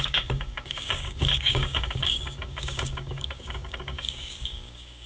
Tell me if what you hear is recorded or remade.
remade